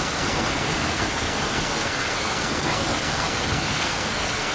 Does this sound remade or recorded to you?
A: remade